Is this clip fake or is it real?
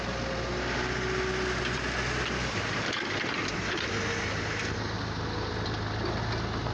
real